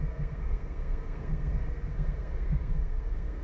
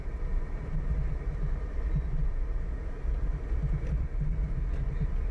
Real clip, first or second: second